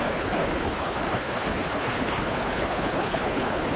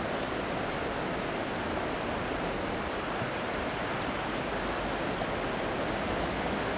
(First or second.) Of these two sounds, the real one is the second